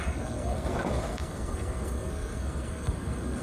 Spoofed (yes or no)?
yes